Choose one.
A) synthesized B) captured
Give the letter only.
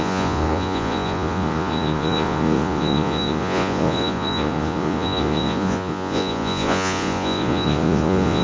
A